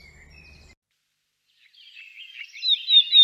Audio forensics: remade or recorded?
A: recorded